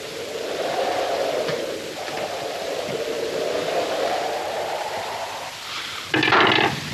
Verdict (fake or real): real